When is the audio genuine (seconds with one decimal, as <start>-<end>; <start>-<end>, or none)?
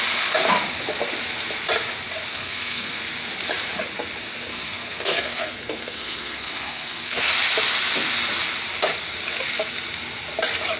0.0-2.3; 3.0-4.5; 7.3-10.8